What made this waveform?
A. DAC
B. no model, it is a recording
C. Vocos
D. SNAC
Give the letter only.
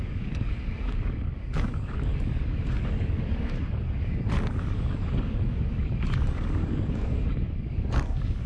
A